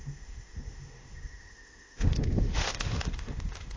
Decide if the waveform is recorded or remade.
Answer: remade